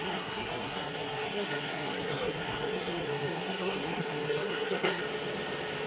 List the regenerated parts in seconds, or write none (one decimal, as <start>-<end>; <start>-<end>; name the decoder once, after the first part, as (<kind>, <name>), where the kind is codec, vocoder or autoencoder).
0.0-5.0 (codec, SNAC)